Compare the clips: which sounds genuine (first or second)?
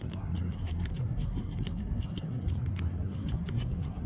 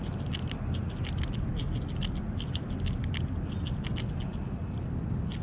second